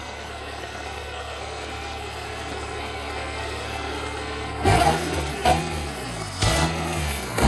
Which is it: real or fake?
fake